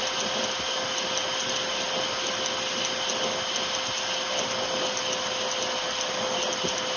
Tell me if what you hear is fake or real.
real